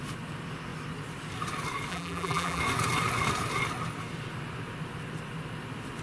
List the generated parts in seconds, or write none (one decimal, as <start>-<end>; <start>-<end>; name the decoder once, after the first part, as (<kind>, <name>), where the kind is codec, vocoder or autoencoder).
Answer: 1.9-2.6 (vocoder, BigVGAN v2)